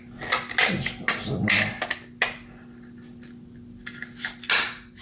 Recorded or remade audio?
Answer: recorded